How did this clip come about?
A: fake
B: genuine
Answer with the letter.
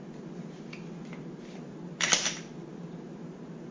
B